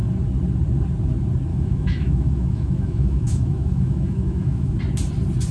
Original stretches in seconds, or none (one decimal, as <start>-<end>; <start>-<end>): 0.0-1.5; 4.8-5.5